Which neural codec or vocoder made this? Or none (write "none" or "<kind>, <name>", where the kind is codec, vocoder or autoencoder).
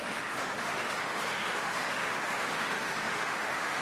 autoencoder, DAC-VAE